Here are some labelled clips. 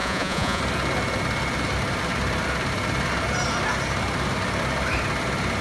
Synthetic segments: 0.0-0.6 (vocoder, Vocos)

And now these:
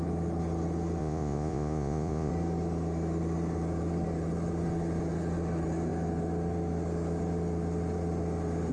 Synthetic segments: 1.0-2.3 (vocoder, Vocos)

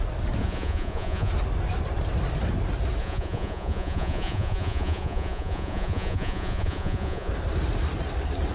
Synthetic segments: 0.4-1.3 (vocoder, Vocos); 3.0-7.3

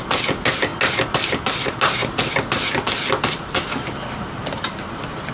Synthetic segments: none